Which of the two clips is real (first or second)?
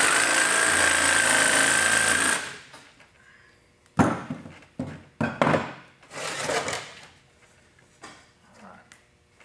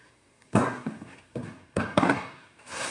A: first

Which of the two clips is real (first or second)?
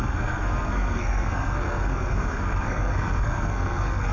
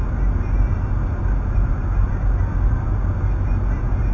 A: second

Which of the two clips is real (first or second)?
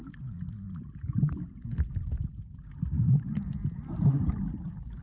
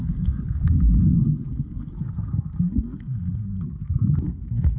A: first